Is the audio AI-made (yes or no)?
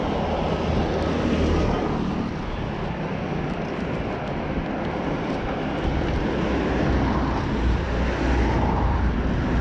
no